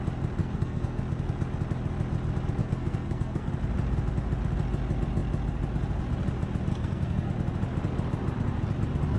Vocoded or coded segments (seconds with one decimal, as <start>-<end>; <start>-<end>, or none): 0.4-1.0; 2.6-3.5; 6.7-7.3